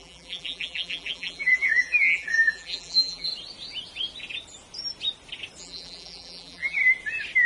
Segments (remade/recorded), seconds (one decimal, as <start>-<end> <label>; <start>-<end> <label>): 0.0-3.3 remade; 3.3-5.6 recorded; 5.6-6.8 remade; 6.8-7.5 recorded